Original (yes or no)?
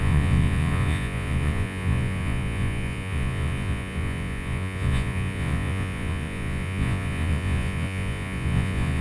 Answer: no